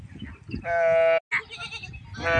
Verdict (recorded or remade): recorded